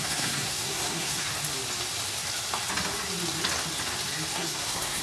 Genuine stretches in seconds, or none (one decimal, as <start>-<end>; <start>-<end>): 1.3-4.3